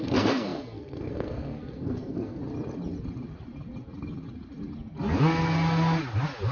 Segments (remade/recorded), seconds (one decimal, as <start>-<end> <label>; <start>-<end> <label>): 0.0-2.4 remade; 2.4-6.5 recorded